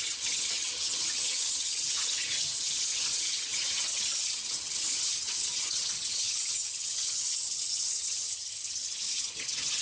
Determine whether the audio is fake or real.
fake